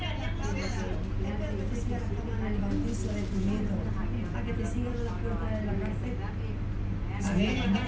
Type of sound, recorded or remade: recorded